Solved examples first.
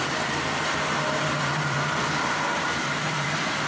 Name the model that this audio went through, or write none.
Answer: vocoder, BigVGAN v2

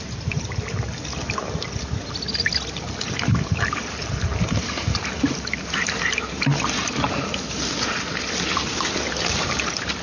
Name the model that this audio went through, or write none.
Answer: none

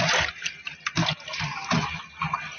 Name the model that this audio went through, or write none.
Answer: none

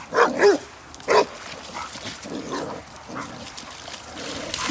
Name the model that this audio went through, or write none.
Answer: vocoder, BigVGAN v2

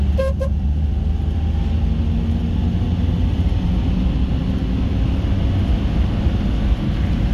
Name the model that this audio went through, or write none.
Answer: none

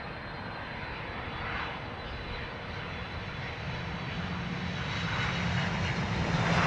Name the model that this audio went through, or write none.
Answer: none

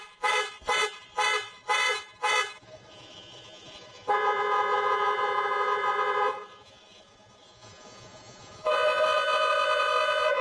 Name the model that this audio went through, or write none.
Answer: vocoder, Vocos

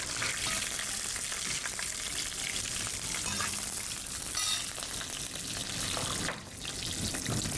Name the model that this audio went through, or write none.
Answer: none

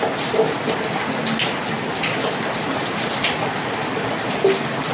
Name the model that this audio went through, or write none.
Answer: none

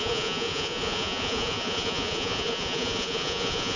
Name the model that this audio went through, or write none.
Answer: vocoder, Vocos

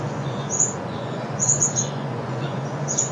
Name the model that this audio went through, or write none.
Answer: vocoder, Vocos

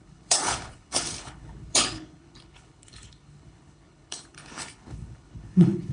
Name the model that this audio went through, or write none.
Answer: codec, HILCodec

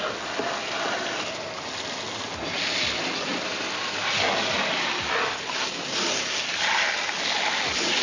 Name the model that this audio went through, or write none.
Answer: none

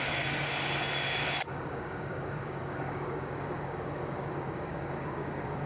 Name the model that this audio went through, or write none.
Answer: codec, DAC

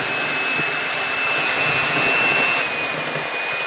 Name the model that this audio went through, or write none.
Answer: none